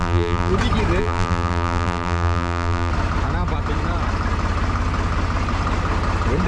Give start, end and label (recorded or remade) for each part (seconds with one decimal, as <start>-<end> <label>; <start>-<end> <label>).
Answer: 0.0-0.5 remade; 0.5-1.0 recorded; 1.0-2.9 remade; 2.9-6.5 recorded

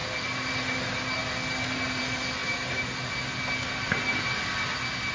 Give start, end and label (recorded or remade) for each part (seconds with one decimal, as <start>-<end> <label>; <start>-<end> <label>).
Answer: 0.0-2.4 recorded; 2.4-3.0 remade; 3.0-5.1 recorded

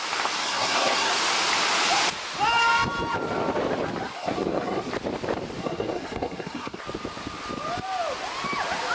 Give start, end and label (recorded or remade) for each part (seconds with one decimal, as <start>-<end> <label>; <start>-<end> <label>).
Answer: 0.0-0.4 recorded; 0.4-1.1 remade; 1.1-4.2 recorded; 4.2-4.9 remade; 4.9-5.6 recorded; 5.6-6.8 remade; 6.8-8.9 recorded

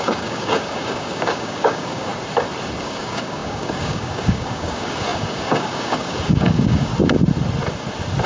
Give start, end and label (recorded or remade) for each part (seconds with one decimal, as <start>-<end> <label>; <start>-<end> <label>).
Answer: 0.0-2.1 remade; 2.1-2.8 recorded; 2.8-6.9 remade; 6.9-8.3 recorded

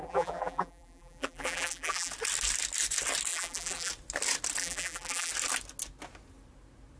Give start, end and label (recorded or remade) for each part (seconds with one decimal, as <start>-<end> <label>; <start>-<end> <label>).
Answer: 0.0-2.1 remade; 2.1-3.3 recorded; 3.3-3.9 remade; 3.9-4.6 recorded; 4.6-5.3 remade; 5.3-7.0 recorded

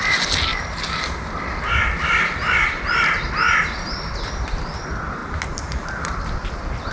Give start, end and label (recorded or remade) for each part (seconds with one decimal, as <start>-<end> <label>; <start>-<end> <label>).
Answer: 0.0-6.9 recorded

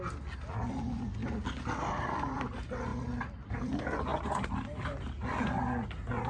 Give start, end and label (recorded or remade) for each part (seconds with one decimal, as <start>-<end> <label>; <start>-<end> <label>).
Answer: 0.0-2.9 recorded; 2.9-3.5 remade; 3.5-6.3 recorded